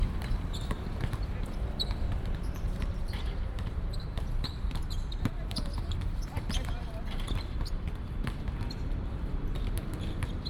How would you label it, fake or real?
fake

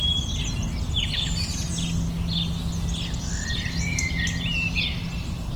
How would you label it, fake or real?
real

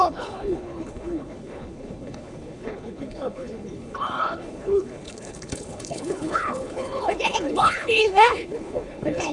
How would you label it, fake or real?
fake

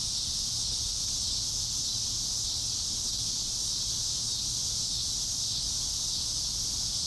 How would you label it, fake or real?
real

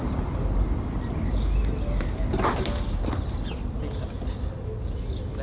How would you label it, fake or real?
real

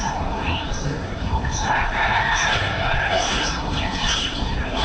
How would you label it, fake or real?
fake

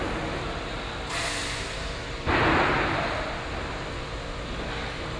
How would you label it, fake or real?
real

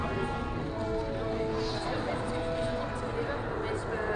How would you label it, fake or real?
real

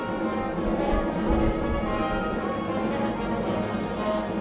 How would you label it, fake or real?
real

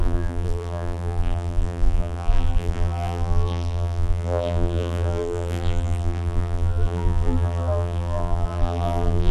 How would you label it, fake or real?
fake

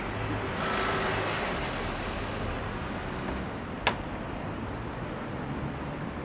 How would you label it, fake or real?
real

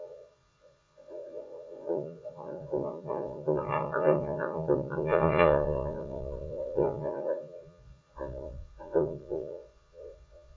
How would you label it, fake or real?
fake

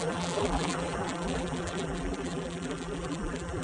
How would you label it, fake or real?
fake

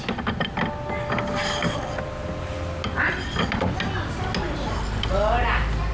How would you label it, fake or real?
real